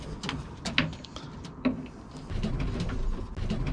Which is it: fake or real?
real